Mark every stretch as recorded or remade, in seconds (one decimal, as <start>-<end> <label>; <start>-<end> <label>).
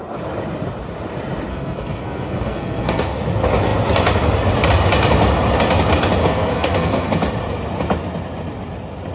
0.0-1.5 recorded; 1.5-3.2 remade; 3.2-6.2 recorded; 6.2-7.1 remade; 7.1-9.1 recorded